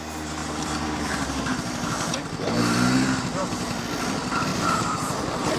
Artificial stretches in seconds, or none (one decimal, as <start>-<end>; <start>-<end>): 0.4-3.8; 4.5-5.6